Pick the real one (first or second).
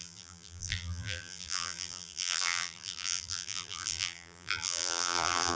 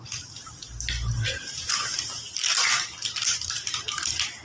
second